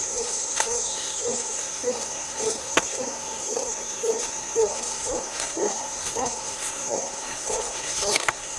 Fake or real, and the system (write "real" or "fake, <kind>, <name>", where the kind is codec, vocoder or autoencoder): fake, codec, SNAC